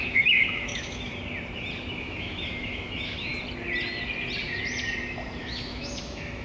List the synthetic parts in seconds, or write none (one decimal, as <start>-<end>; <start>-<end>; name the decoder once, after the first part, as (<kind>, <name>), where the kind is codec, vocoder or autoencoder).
0.0-1.1 (autoencoder, DAC-VAE); 2.0-3.3; 5.4-6.4